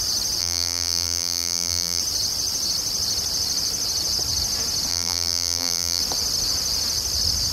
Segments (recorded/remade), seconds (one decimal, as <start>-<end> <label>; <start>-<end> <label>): 0.0-0.4 recorded; 0.4-2.0 remade; 2.0-4.9 recorded; 4.9-6.0 remade; 6.0-7.5 recorded

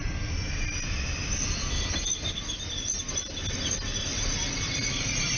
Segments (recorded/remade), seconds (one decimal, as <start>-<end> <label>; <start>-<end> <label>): 0.0-5.4 recorded

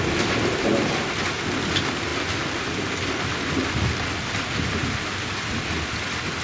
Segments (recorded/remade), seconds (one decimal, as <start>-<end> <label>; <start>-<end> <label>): 0.0-6.4 recorded

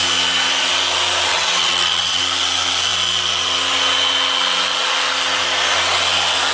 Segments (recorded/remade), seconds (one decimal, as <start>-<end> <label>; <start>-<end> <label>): 0.0-1.3 recorded; 1.3-2.2 remade; 2.2-6.5 recorded

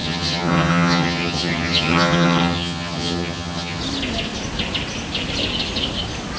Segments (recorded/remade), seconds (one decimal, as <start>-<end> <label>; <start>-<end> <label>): 0.0-3.8 remade; 3.8-6.4 recorded

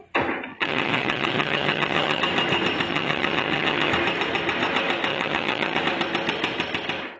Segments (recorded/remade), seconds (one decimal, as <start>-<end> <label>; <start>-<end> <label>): 0.0-0.5 recorded; 0.5-2.2 remade; 2.2-2.9 recorded; 2.9-3.9 remade; 3.9-5.1 recorded; 5.1-5.8 remade; 5.8-7.2 recorded

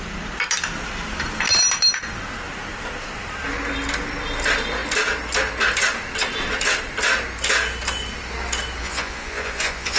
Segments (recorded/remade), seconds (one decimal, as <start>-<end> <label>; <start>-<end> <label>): 0.0-8.8 recorded; 8.8-10.0 remade